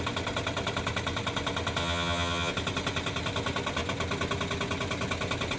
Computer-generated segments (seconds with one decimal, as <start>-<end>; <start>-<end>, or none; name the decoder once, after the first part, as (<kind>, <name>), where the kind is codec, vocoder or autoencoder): 1.8-2.5 (vocoder, HiFi-GAN)